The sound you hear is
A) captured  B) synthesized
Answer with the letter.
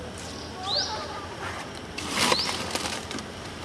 A